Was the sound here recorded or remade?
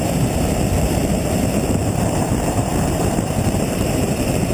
remade